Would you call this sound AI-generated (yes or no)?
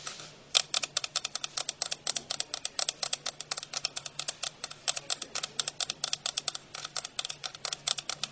no